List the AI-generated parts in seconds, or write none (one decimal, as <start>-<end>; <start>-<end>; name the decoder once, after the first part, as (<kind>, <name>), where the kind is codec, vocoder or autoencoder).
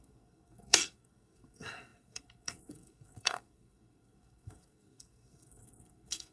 0.0-6.3 (codec, SNAC)